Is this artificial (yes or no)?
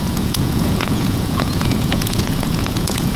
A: yes